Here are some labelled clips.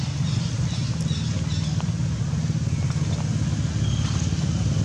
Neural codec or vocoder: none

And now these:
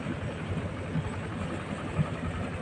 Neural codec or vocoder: none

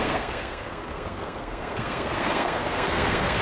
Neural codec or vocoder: codec, SNAC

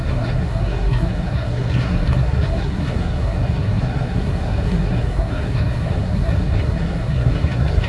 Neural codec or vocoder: codec, SNAC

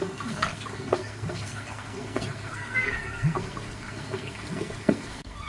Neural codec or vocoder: codec, SNAC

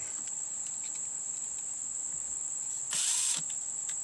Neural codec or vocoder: none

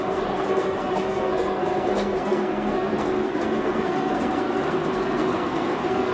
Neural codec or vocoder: codec, SNAC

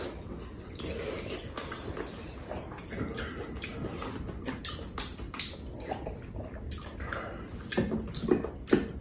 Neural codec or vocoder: none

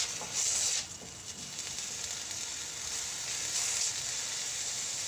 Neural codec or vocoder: none